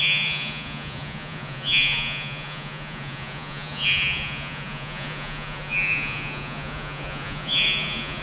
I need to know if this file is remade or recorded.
remade